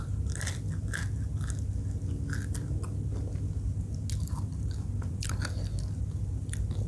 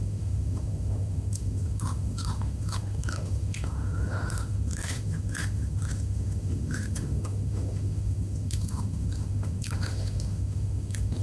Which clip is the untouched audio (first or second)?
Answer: first